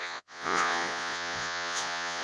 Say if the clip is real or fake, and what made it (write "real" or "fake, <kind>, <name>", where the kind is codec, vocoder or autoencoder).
fake, vocoder, Vocos